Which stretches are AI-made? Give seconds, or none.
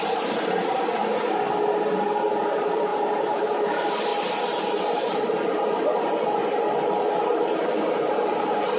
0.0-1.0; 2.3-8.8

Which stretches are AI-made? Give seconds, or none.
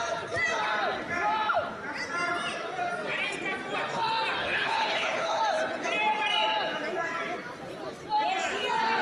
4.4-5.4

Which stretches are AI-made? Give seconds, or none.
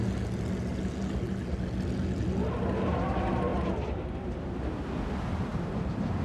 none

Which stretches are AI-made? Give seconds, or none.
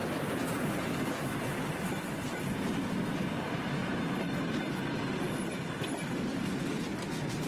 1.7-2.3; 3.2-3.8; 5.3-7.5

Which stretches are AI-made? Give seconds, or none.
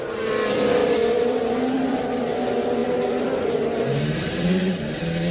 0.8-1.9; 2.8-3.4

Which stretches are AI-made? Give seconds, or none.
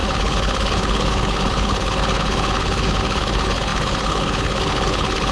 0.0-5.3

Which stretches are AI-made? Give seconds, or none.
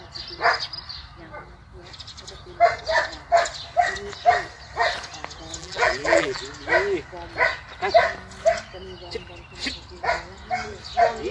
5.6-6.4